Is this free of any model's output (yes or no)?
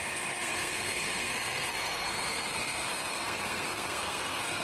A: no